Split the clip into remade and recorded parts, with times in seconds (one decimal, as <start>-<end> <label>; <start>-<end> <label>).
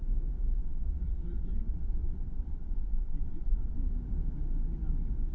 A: 0.0-0.6 recorded; 0.6-3.8 remade; 3.8-5.3 recorded